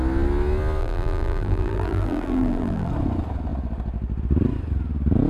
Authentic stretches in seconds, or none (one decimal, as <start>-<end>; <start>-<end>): 0.0-0.8; 2.9-5.3